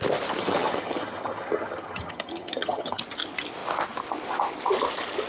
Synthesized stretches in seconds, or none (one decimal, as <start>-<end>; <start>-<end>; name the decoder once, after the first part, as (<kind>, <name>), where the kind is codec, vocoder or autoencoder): 0.4-3.0 (vocoder, HiFi-GAN)